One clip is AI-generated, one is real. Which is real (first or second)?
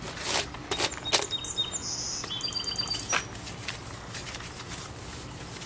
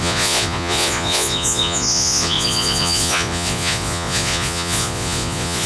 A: first